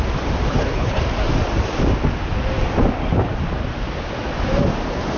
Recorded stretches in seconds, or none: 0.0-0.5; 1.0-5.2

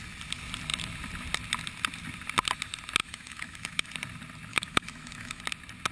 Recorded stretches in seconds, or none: 0.0-3.0; 3.9-4.5; 5.4-5.9

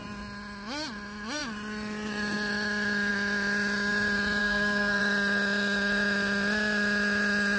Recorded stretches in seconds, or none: 0.0-4.4; 5.0-7.6

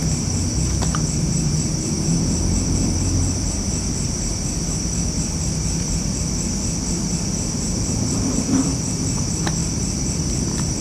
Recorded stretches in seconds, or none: 0.0-0.9; 6.1-9.6

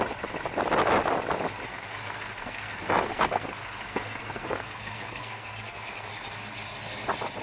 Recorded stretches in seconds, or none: 0.0-1.7; 6.1-7.4

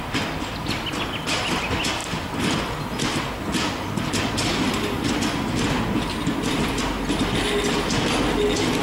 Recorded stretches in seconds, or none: 0.0-8.8